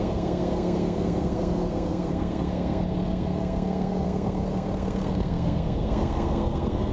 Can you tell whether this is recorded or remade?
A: remade